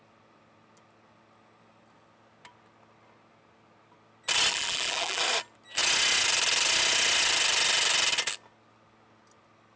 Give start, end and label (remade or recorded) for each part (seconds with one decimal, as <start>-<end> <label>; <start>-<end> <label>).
0.0-4.5 recorded; 4.5-5.2 remade; 5.2-9.8 recorded